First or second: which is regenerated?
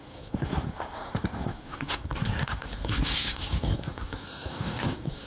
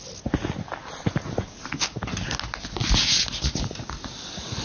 first